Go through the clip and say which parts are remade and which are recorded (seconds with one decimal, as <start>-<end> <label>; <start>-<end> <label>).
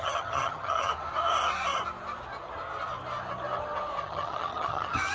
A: 0.0-0.9 remade; 0.9-4.0 recorded; 4.0-5.1 remade